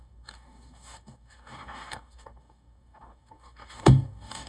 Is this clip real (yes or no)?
no